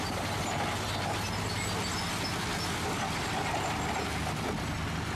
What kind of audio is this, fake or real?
real